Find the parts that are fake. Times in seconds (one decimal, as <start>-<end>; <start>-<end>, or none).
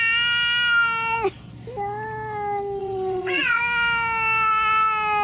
2.8-3.6